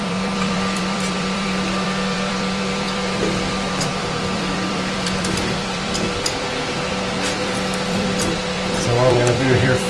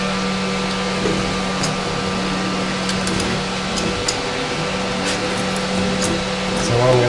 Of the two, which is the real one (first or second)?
second